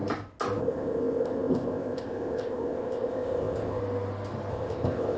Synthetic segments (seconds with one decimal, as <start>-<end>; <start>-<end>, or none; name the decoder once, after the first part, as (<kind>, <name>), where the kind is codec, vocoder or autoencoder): 0.6-3.8 (codec, ZipCodec); 4.5-5.2